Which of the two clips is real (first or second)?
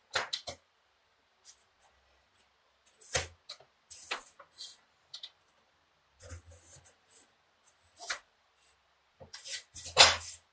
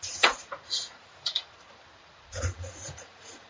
first